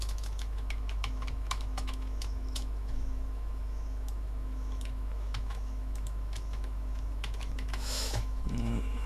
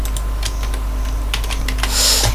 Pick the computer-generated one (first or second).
first